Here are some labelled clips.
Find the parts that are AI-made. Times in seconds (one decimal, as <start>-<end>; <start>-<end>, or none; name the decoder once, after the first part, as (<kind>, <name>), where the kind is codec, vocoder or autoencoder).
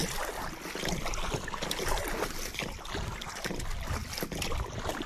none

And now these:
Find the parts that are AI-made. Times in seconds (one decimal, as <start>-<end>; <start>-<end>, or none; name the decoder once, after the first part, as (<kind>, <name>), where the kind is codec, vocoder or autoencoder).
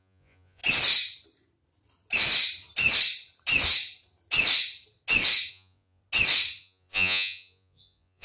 0.0-0.6 (vocoder, Vocos); 5.5-6.0; 6.6-8.2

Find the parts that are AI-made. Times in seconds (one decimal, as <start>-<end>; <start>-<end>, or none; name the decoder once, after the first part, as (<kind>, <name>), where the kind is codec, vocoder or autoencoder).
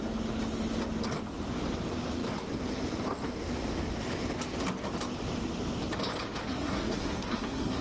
6.4-7.8 (codec, SNAC)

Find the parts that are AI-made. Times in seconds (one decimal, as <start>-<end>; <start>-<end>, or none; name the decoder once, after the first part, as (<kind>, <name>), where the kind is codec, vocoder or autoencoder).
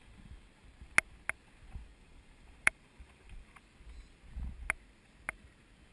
1.9-3.6 (vocoder, BigVGAN v2)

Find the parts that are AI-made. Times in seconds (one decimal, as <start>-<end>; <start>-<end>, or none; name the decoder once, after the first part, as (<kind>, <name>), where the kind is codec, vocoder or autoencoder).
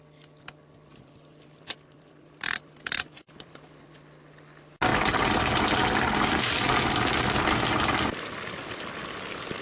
0.9-3.9 (vocoder, BigVGAN v2)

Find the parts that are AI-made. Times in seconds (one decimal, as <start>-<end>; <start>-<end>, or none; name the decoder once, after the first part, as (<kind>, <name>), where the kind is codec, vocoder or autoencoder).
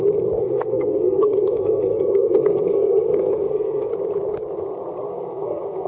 0.4-3.9 (codec, SNAC); 5.1-5.9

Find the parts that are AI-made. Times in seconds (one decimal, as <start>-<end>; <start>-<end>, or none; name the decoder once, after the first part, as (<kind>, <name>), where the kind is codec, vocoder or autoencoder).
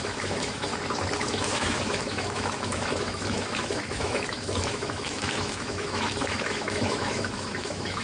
0.0-0.7 (autoencoder, DAC-VAE); 1.2-8.0